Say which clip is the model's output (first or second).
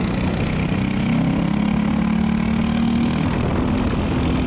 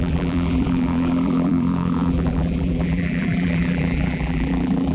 second